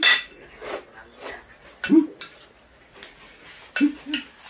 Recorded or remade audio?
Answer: recorded